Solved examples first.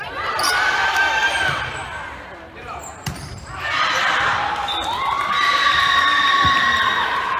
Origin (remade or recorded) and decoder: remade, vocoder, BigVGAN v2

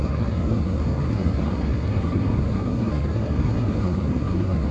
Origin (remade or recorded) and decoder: remade, codec, SNAC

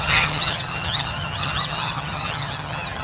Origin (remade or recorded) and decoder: remade, vocoder, HiFi-GAN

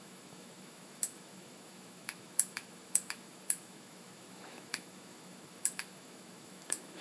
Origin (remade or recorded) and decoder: remade, autoencoder, DAC-VAE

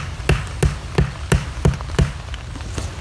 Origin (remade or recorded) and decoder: recorded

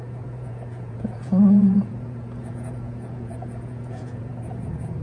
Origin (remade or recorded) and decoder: remade, vocoder, Vocos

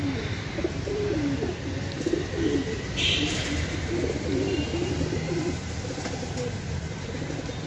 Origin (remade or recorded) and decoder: recorded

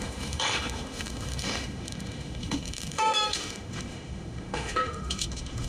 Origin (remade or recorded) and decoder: remade, autoencoder, DAC-VAE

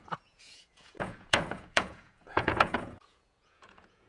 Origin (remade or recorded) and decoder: remade, vocoder, Vocos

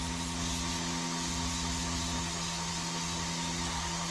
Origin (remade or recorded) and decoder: recorded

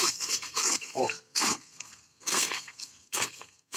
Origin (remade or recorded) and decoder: remade, codec, SNAC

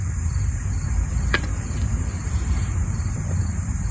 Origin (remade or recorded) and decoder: remade, vocoder, BigVGAN v2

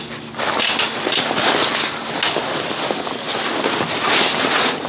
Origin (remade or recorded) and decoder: recorded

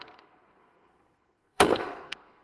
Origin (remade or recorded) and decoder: remade, codec, SNAC